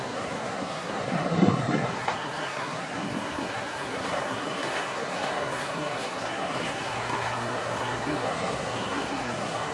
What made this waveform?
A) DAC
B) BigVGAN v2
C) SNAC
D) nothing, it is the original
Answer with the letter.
C